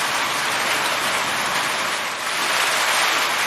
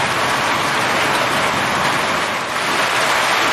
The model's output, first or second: first